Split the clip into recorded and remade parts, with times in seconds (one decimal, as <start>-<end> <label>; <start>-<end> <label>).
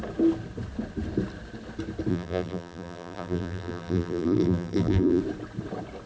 0.0-2.1 recorded; 2.1-5.2 remade; 5.2-6.1 recorded